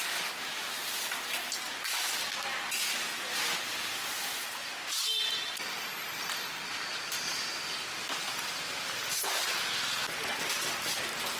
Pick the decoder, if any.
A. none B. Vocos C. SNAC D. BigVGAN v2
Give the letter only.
A